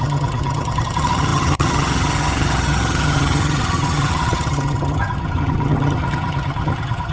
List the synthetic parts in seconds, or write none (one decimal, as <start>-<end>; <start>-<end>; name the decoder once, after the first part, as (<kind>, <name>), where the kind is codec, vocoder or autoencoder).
0.0-7.1 (vocoder, HiFi-GAN)